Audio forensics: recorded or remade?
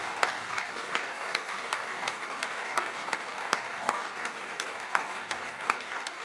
remade